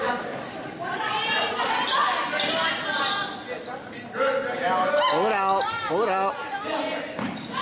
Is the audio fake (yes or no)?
no